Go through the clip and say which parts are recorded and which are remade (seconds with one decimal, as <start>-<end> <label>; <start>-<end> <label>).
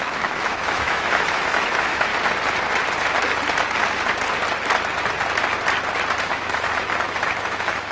0.0-2.1 remade; 2.1-6.2 recorded; 6.2-7.9 remade